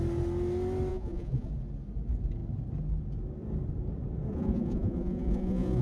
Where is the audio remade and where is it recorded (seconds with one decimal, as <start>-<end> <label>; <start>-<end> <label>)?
0.0-0.9 recorded; 0.9-1.5 remade; 1.5-4.3 recorded; 4.3-5.8 remade